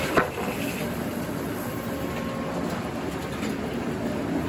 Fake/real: real